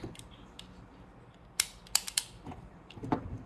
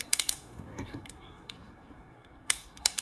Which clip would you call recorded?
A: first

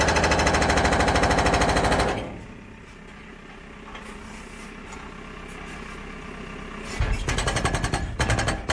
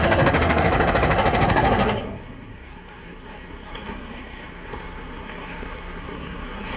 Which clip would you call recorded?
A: first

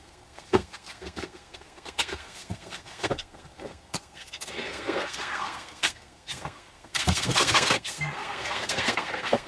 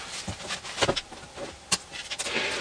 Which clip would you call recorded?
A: second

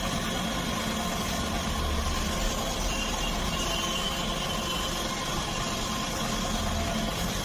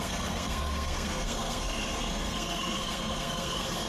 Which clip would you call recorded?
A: first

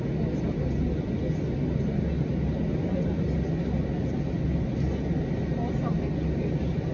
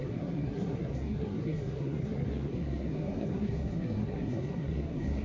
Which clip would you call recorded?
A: first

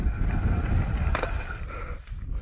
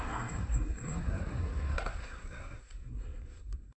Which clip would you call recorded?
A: first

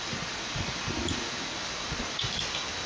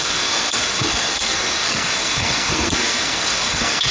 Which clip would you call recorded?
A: first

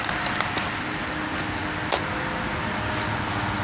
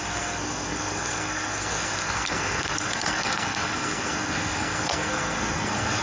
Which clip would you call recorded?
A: first